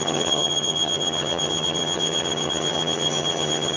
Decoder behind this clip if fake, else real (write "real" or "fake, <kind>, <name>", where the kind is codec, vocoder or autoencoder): fake, vocoder, HiFi-GAN